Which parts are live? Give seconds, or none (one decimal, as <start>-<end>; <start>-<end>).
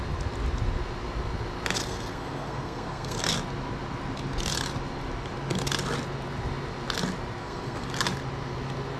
0.0-1.8; 3.2-7.4; 7.9-9.0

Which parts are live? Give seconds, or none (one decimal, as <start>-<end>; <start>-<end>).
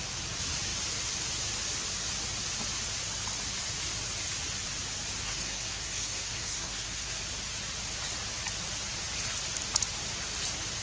0.0-5.2; 7.2-10.8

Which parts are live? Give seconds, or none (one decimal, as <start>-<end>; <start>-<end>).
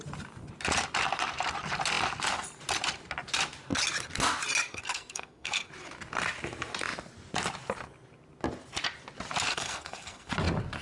0.0-4.7; 5.7-9.5; 10.3-10.8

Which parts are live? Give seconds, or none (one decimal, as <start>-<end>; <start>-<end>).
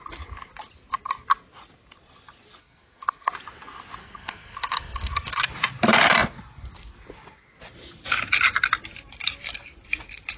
0.0-2.6; 3.3-4.0; 5.4-10.4